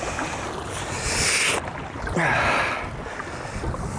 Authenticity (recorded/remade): recorded